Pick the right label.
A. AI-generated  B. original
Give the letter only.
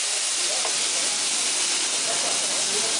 B